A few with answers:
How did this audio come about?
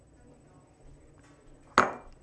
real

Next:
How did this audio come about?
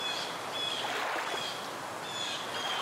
real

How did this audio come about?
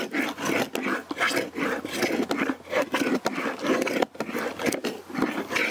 real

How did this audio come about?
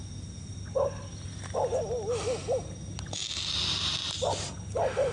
real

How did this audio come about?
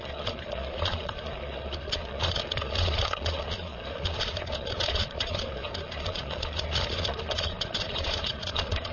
fake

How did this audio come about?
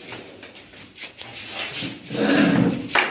real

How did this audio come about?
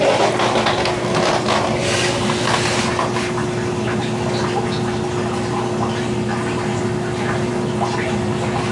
real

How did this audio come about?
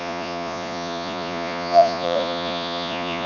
fake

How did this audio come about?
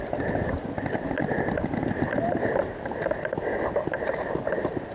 real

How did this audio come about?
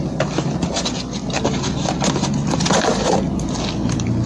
real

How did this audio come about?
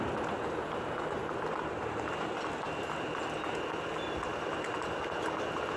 real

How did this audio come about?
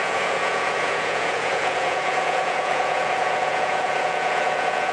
fake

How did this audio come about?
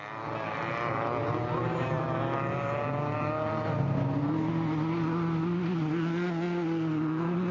real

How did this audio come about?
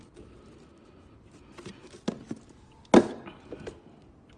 real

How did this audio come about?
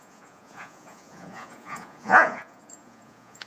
fake